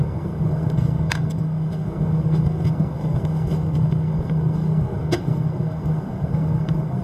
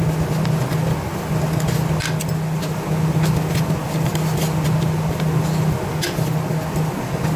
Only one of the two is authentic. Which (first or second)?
second